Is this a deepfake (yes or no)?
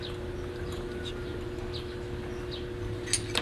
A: no